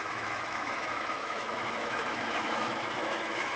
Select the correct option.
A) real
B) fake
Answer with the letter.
B